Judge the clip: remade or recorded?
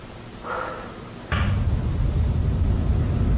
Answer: recorded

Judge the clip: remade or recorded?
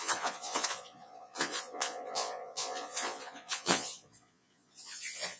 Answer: remade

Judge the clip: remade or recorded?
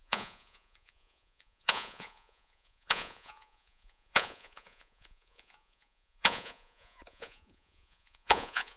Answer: remade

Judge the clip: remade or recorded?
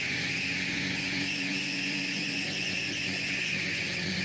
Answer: remade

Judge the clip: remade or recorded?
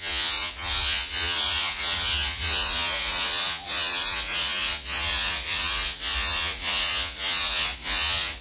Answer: remade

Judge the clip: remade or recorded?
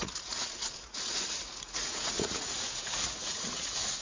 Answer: remade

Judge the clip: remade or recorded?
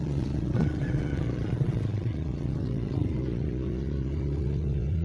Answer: remade